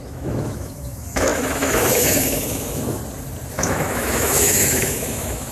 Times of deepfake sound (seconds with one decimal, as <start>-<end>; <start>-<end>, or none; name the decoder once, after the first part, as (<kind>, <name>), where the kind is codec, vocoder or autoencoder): 0.0-3.0 (autoencoder, DAC-VAE); 3.5-5.5